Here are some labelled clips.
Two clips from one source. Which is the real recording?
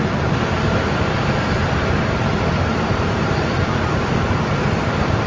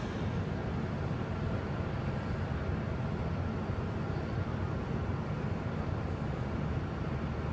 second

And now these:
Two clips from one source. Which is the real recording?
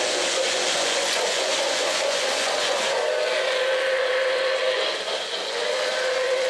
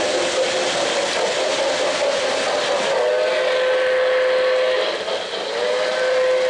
second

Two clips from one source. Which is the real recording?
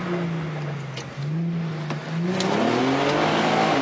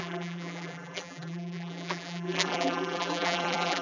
first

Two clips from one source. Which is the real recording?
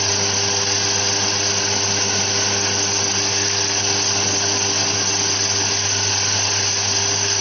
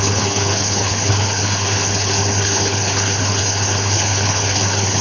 first